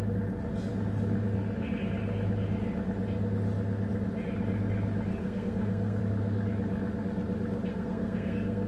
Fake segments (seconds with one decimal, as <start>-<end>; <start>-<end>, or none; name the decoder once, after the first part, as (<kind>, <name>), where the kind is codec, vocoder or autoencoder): 5.2-6.0 (codec, SNAC); 7.7-8.7